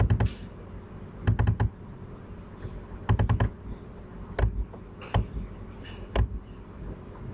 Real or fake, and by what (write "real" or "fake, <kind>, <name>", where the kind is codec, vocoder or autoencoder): real